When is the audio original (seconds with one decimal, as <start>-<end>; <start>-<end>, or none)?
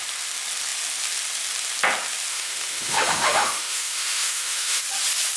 0.0-2.3; 4.8-5.4